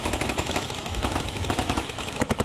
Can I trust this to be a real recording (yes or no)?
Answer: no